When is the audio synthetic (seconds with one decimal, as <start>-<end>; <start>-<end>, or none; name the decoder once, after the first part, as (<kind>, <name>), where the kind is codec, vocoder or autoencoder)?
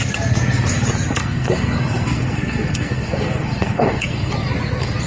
1.2-4.3 (codec, SNAC)